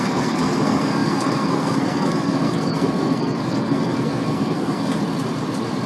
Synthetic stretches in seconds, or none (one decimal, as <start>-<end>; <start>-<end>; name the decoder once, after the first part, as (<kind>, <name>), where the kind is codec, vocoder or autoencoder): 0.0-5.0 (codec, SNAC)